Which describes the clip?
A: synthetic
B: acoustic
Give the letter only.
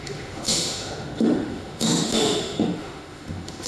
A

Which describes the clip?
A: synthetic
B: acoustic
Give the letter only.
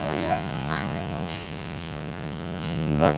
A